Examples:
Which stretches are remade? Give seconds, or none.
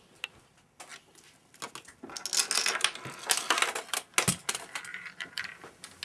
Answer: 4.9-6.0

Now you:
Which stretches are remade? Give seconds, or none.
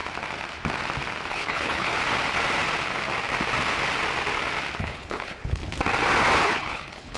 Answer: 1.3-1.9; 4.8-5.6; 6.4-7.2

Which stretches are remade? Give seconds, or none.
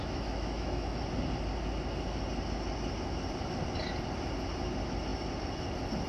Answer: 0.0-1.0